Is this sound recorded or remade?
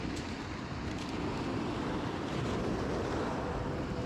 recorded